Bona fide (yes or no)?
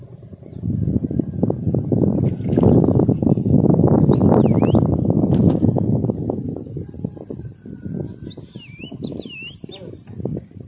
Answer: yes